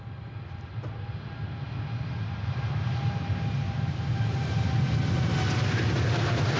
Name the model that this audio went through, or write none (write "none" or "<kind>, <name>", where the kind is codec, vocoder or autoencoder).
none